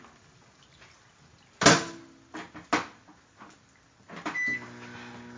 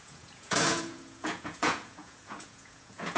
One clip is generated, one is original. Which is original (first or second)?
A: first